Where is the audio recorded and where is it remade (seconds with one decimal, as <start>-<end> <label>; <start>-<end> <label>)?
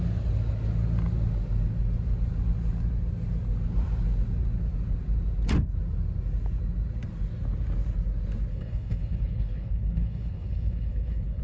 0.0-8.5 recorded; 8.5-11.4 remade